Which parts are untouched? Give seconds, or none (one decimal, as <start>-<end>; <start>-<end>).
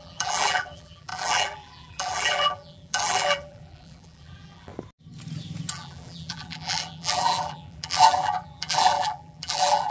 4.7-5.7